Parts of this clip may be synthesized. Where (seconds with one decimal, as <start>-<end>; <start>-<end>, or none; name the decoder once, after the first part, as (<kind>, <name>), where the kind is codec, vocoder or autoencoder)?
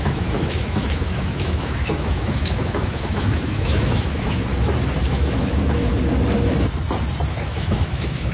0.0-4.5 (autoencoder, DAC-VAE); 5.1-5.9; 7.3-8.3